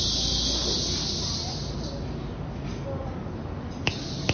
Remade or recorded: recorded